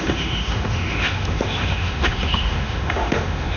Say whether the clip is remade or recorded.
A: remade